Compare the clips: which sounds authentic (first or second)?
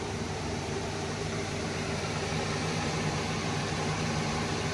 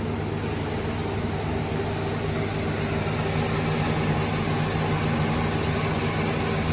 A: second